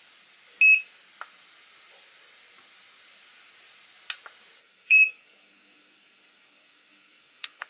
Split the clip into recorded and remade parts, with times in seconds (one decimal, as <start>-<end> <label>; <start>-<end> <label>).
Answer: 0.0-4.6 recorded; 4.6-7.7 remade